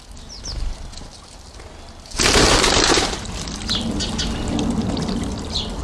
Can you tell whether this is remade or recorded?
recorded